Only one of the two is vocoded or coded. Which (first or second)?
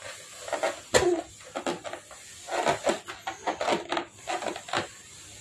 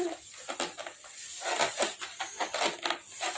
second